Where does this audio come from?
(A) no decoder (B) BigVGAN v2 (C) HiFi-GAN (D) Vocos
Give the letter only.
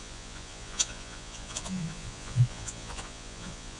D